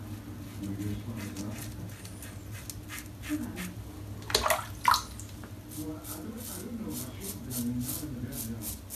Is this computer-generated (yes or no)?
no